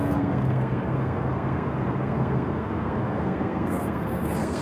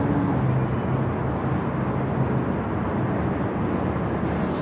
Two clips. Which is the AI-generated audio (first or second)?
first